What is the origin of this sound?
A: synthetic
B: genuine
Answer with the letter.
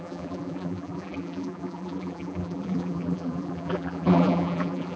A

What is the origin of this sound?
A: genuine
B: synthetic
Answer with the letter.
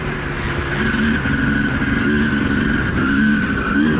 A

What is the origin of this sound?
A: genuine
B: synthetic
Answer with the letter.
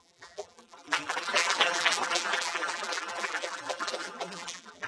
B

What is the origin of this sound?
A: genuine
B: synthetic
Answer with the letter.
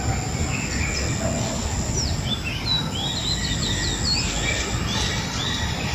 A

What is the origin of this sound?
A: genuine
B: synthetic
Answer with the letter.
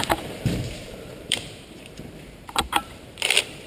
B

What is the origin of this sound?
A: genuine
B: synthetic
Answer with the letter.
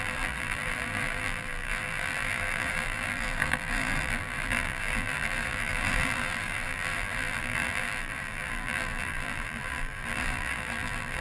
B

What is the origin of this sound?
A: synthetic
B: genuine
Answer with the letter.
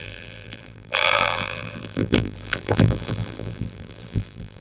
A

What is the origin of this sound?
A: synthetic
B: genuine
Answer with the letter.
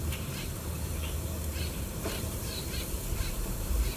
A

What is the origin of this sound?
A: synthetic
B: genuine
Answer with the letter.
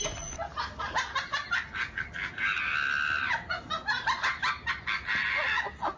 B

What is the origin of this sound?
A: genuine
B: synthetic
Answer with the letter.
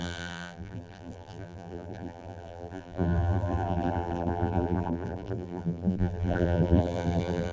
B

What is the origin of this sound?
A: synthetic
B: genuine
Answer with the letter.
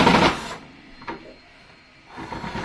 B